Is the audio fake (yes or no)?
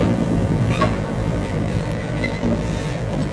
yes